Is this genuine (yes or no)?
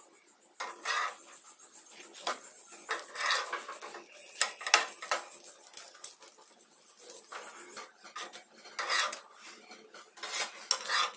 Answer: yes